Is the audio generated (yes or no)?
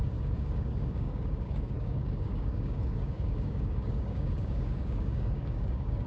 yes